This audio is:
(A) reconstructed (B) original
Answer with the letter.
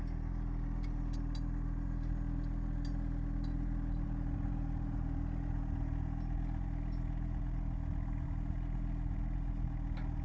B